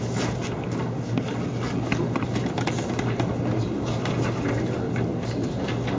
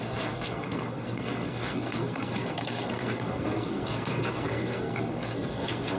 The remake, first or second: second